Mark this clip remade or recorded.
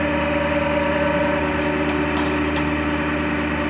recorded